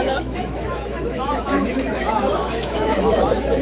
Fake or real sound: fake